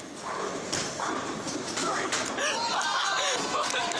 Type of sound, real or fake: real